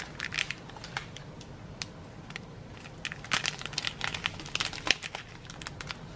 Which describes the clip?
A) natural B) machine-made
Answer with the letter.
A